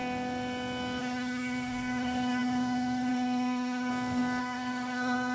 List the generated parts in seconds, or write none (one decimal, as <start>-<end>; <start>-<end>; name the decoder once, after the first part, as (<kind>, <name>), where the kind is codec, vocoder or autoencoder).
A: 1.0-3.9 (codec, SNAC); 4.4-5.3